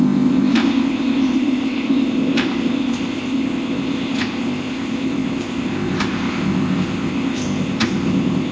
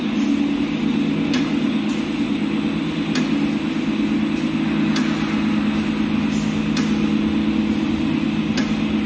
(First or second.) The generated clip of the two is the first